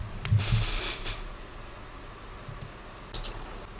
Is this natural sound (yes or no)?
yes